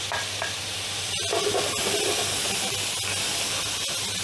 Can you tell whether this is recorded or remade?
recorded